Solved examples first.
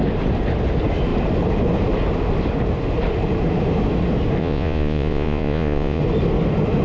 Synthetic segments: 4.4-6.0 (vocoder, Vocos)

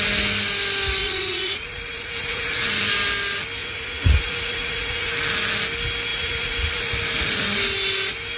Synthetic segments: 1.0-2.8 (vocoder, Vocos); 3.6-5.1; 6.1-6.9

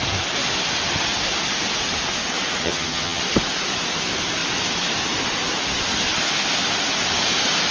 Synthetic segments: 2.6-3.2 (vocoder, HiFi-GAN)

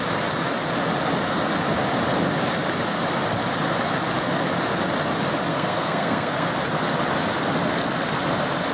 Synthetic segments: 5.5-6.5 (codec, SNAC)

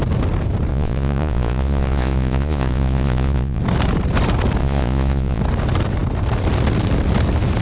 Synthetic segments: 0.7-3.6 (vocoder, Vocos); 4.6-5.4

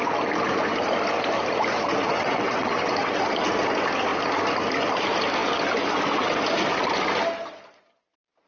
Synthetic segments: 2.1-3.2 (vocoder, WaveNeXt)

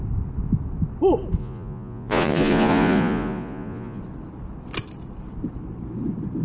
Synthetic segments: 1.4-4.0 (vocoder, Vocos)